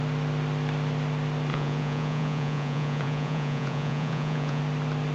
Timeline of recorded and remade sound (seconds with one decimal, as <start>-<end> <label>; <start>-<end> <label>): 0.0-1.5 recorded; 1.5-4.6 remade; 4.6-5.1 recorded